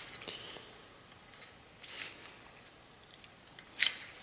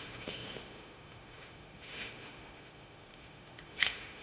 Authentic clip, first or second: first